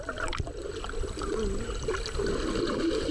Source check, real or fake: real